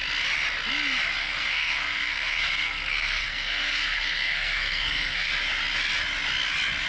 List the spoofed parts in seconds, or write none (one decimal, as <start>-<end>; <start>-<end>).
1.2-5.3